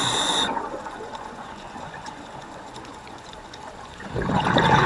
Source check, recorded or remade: remade